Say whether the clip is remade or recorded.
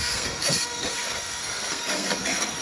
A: remade